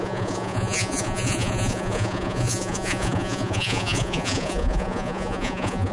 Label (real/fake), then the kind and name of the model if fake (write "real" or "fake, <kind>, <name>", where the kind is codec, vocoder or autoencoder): fake, vocoder, Vocos